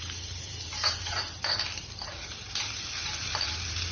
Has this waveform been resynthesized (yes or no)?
yes